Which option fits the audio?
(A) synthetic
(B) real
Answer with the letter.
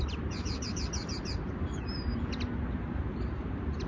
A